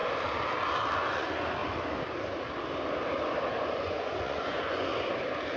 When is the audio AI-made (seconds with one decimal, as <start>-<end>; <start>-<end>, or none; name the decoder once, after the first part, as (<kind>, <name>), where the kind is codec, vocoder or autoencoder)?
1.0-1.6 (vocoder, Vocos); 3.7-4.9